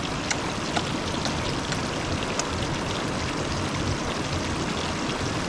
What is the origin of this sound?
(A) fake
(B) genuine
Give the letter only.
B